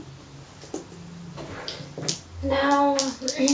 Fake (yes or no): no